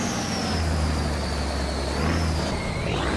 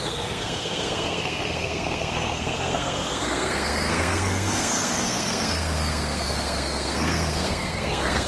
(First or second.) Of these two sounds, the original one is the first